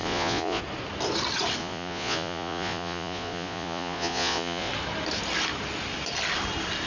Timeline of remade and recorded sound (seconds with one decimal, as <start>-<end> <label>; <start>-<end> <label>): 0.0-0.6 remade; 0.6-1.6 recorded; 1.6-4.7 remade; 4.7-6.9 recorded